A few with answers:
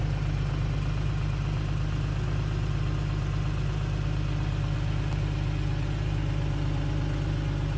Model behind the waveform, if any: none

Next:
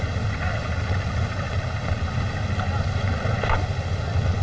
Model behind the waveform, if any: none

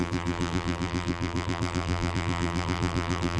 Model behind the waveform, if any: vocoder, BigVGAN v2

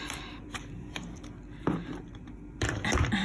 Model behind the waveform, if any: vocoder, BigVGAN v2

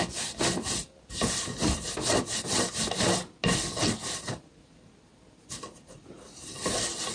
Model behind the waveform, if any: none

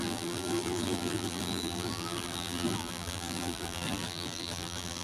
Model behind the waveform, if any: vocoder, BigVGAN v2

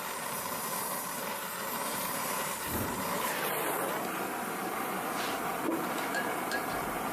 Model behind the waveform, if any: vocoder, BigVGAN v2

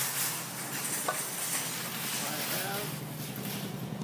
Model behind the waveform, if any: none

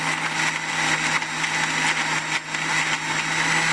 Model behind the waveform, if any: none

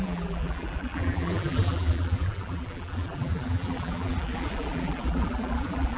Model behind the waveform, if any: vocoder, BigVGAN v2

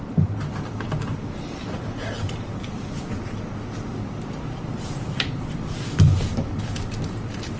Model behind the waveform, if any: vocoder, BigVGAN v2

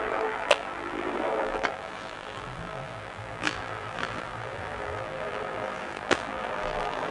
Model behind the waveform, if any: vocoder, BigVGAN v2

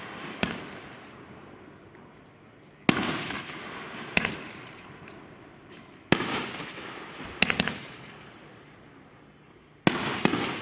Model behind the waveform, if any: none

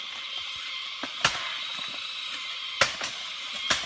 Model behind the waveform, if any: vocoder, BigVGAN v2